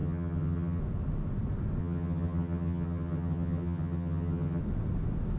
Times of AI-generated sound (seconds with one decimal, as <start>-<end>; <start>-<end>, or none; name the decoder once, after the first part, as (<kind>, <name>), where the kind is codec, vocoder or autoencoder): 0.0-0.8 (vocoder, HiFi-GAN); 1.8-4.6